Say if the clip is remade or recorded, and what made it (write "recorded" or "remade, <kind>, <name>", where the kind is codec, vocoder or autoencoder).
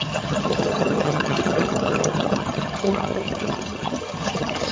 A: remade, vocoder, HiFi-GAN